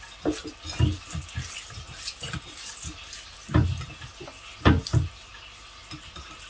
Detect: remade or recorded recorded